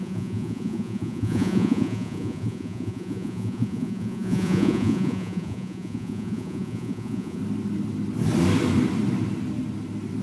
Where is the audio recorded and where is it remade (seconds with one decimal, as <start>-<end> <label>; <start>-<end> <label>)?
0.0-7.4 remade; 7.4-10.2 recorded